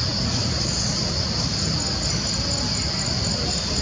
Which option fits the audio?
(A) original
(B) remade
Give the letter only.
A